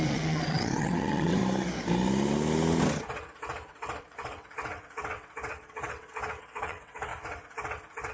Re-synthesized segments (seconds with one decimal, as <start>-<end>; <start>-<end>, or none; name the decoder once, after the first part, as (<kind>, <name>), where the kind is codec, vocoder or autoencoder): 0.0-1.4 (vocoder, WaveNeXt); 4.0-7.1